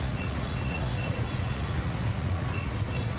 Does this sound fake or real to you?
fake